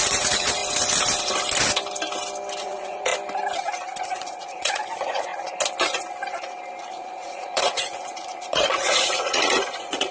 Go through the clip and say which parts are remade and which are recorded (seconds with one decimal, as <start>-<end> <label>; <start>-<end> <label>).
0.0-0.6 remade; 0.6-2.6 recorded; 2.6-3.1 remade; 3.1-4.0 recorded; 4.0-5.3 remade; 5.3-6.8 recorded; 6.8-10.1 remade